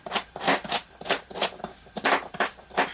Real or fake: real